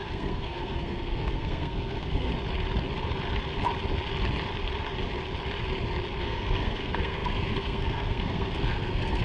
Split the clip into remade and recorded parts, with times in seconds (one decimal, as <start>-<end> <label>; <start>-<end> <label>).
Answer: 0.0-2.3 remade; 2.3-6.2 recorded; 6.2-9.2 remade